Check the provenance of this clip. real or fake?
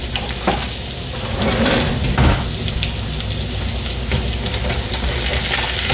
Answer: real